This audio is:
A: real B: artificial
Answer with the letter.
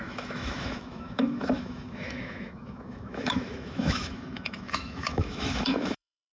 B